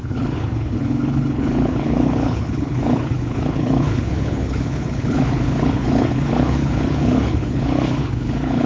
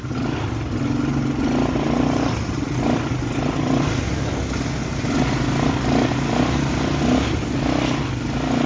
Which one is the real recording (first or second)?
second